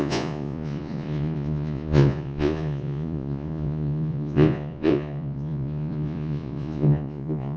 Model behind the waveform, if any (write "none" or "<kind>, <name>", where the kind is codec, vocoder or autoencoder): vocoder, Vocos